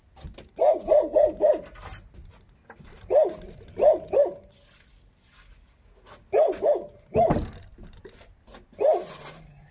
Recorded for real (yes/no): yes